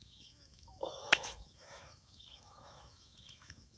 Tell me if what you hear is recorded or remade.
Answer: remade